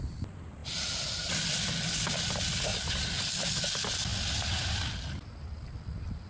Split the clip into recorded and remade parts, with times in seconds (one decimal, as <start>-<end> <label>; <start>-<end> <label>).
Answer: 0.0-6.3 recorded